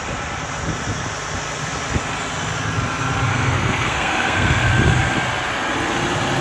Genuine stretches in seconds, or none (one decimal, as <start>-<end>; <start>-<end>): 0.0-3.3; 4.7-6.4